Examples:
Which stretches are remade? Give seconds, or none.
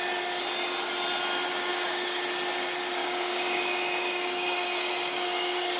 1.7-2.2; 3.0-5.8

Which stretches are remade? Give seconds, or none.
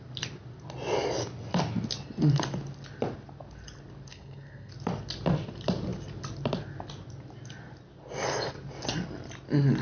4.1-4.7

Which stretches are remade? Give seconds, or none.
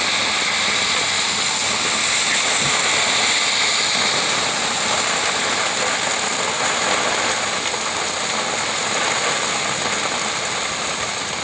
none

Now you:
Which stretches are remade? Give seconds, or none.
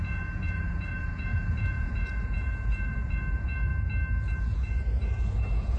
0.0-3.7; 4.4-5.8